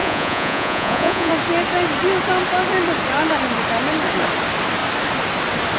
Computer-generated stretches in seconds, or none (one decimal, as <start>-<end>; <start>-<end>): 0.0-1.3